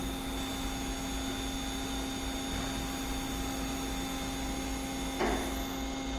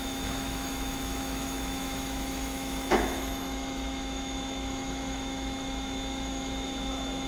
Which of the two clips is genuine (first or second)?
first